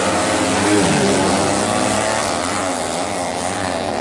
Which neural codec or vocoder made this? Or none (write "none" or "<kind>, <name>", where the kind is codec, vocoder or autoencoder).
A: none